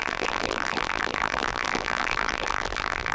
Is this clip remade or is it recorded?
remade